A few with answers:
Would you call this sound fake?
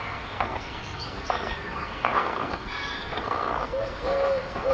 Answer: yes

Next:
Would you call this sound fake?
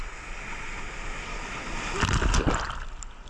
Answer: no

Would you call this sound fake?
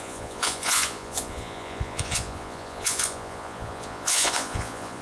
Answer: yes